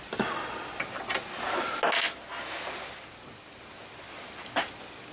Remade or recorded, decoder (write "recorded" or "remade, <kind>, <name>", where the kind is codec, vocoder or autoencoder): recorded